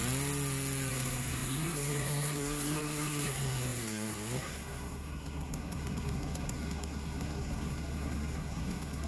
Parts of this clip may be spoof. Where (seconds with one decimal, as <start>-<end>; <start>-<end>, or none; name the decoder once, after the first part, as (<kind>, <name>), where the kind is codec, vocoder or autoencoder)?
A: 0.9-9.1 (codec, SNAC)